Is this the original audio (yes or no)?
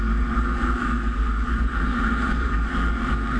no